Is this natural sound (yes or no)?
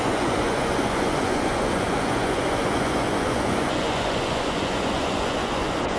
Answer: no